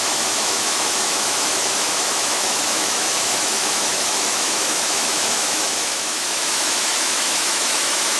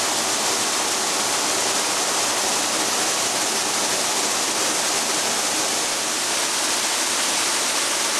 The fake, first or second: first